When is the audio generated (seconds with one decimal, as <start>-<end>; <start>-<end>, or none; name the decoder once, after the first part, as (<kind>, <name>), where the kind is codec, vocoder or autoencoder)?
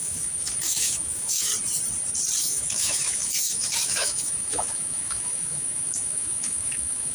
0.0-1.5 (autoencoder, DAC-VAE); 2.4-7.1